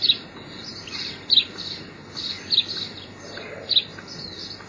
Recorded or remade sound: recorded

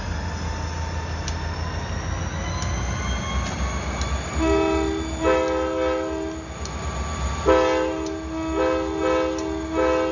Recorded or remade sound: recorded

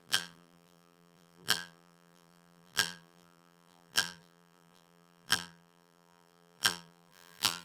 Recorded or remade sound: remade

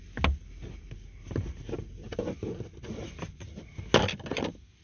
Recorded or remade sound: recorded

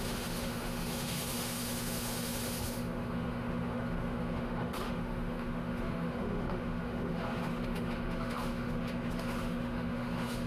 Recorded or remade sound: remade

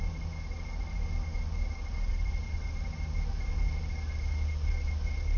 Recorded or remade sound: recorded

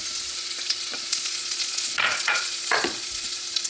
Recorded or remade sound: remade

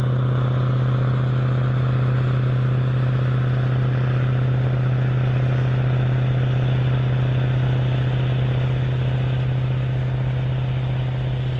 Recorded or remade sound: recorded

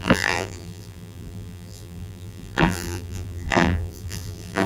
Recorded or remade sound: remade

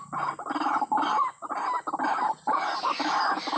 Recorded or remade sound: recorded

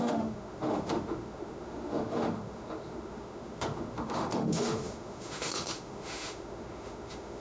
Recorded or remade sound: remade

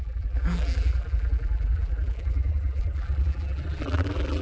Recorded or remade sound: remade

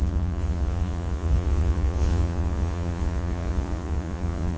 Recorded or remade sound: remade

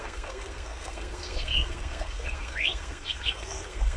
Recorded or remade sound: remade